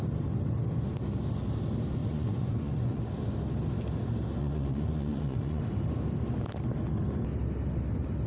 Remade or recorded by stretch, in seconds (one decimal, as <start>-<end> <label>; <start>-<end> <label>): 0.0-2.0 recorded; 2.0-3.0 remade; 3.0-4.4 recorded; 4.4-5.6 remade; 5.6-8.3 recorded